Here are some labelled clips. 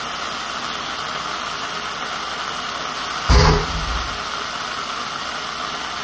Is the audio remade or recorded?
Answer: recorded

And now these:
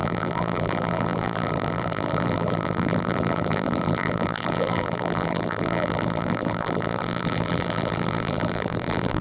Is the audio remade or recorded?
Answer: remade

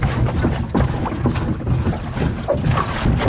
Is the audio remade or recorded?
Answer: recorded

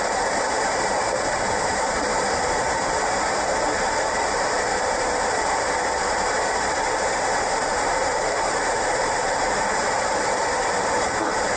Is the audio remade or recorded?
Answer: remade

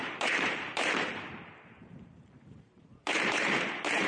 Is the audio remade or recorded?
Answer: remade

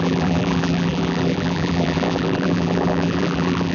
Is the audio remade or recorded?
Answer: remade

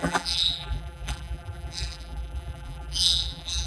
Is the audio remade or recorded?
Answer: remade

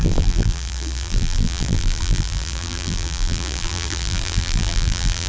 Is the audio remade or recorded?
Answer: remade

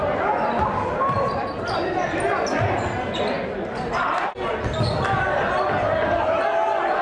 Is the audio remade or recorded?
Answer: recorded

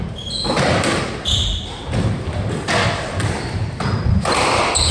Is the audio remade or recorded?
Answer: remade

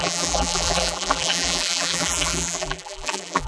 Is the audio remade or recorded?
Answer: remade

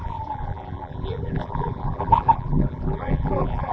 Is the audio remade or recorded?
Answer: remade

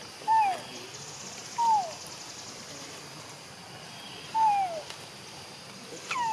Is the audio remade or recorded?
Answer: recorded